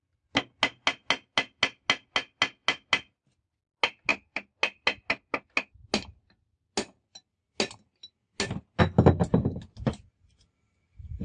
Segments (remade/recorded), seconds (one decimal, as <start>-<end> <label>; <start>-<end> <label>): 0.0-11.2 recorded